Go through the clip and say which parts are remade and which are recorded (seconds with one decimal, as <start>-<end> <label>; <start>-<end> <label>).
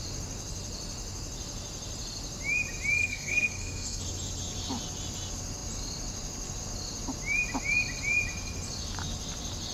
0.0-3.0 recorded; 3.0-4.0 remade; 4.0-9.7 recorded